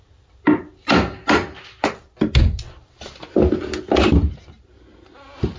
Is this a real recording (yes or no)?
yes